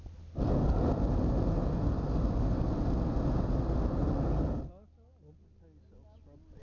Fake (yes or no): no